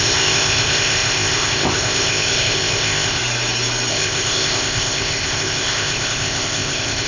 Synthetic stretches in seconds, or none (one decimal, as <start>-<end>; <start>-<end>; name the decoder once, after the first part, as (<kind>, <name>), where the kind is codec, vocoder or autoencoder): 0.0-3.2 (codec, ZipCodec); 3.9-7.1